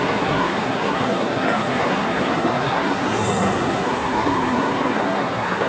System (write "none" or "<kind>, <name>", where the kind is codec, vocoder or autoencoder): codec, SNAC